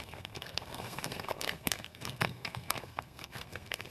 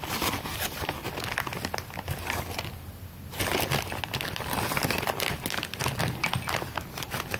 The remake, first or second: first